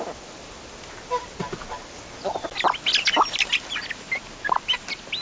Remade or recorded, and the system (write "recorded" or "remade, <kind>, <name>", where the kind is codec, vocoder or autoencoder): recorded